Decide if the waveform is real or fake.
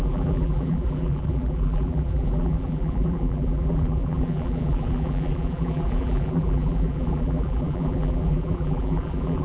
fake